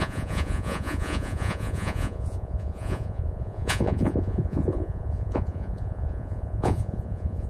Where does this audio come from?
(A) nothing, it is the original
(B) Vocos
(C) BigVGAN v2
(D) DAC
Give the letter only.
B